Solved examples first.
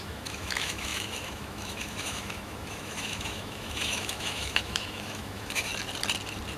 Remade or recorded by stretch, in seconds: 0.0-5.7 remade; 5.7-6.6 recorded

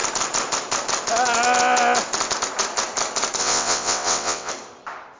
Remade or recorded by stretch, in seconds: 0.0-3.4 recorded; 3.4-4.5 remade; 4.5-5.2 recorded

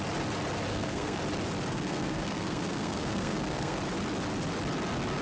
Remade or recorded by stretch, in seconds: 0.0-0.7 recorded; 0.7-1.2 remade; 1.2-1.7 recorded; 1.7-3.8 remade; 3.8-5.2 recorded

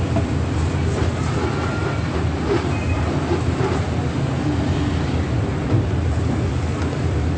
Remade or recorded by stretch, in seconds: 0.0-1.8 recorded; 1.8-6.2 remade; 6.2-7.4 recorded